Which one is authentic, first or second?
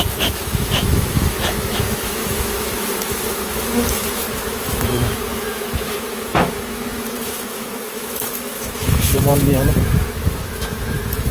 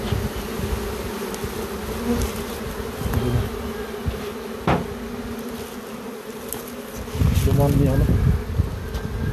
second